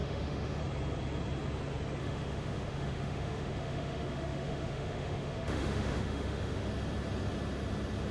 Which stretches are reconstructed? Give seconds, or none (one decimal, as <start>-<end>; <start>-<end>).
0.0-0.6; 2.0-6.7